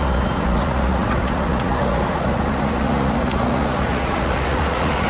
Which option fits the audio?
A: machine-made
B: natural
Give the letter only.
A